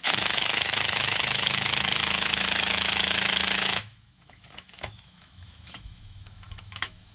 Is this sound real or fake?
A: fake